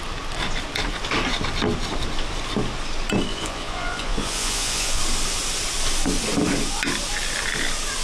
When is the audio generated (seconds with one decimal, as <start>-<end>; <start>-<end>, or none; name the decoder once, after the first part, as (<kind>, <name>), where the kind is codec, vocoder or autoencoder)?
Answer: 3.3-5.0 (vocoder, Vocos)